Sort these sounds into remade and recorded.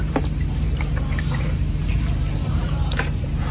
remade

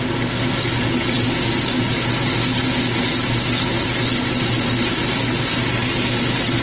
recorded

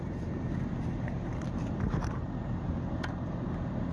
remade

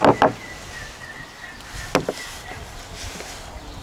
recorded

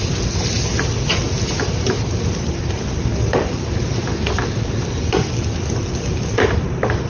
recorded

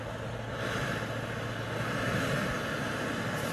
recorded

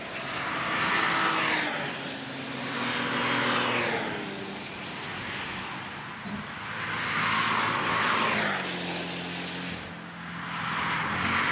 recorded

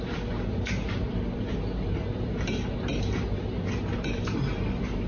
remade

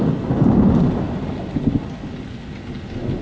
recorded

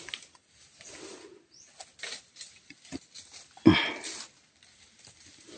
recorded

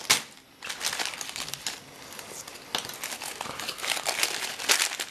recorded